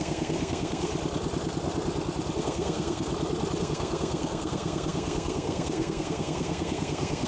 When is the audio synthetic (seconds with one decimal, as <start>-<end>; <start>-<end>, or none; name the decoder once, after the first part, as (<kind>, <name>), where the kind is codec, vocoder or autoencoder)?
0.0-0.9 (codec, SNAC); 2.4-3.1; 3.6-7.3